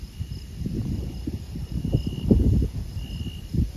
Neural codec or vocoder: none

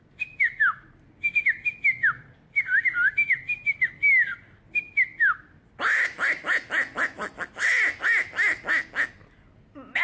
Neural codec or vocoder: none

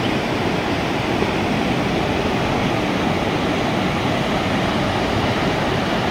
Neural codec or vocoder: none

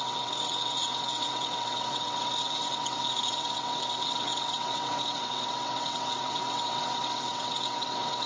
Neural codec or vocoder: vocoder, WaveNeXt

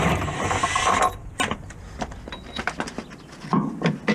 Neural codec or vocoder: none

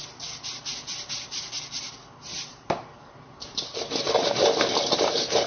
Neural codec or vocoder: none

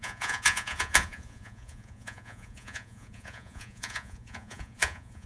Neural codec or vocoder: vocoder, Vocos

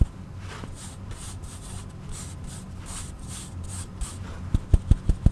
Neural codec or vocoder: none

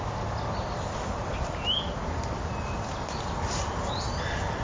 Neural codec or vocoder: none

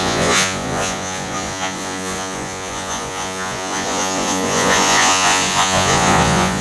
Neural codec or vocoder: vocoder, Vocos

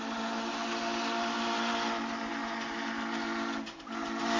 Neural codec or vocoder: none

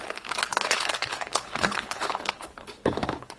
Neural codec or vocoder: codec, HILCodec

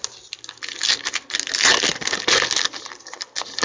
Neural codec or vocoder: none